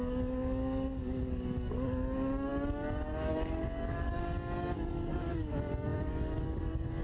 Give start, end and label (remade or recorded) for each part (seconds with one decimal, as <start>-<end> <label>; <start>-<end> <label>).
0.0-7.0 remade